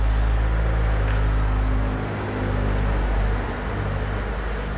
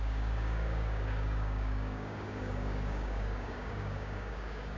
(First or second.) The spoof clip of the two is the second